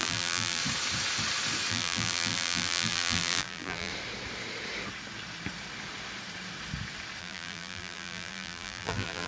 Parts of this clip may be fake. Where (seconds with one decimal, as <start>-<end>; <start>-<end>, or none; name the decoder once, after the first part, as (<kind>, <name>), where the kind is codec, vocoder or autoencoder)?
0.0-0.6 (vocoder, BigVGAN v2); 1.7-3.9; 7.2-9.3